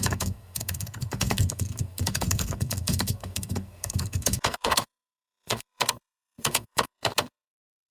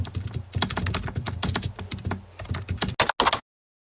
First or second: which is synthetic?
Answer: first